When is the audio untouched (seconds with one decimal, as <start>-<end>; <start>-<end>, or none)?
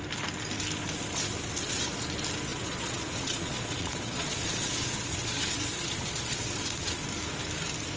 0.0-2.5; 6.9-8.0